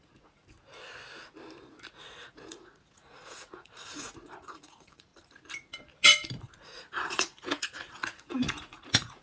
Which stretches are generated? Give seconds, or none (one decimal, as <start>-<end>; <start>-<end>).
0.0-0.4; 1.9-5.1; 6.6-9.2